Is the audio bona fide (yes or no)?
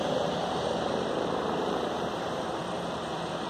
no